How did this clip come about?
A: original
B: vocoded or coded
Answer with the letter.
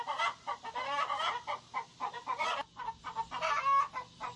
A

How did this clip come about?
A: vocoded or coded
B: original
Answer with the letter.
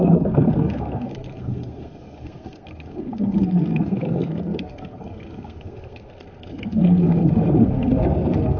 A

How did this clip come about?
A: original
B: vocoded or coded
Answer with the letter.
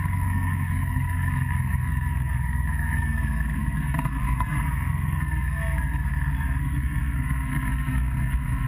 B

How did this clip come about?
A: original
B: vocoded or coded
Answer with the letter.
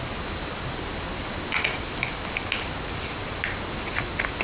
A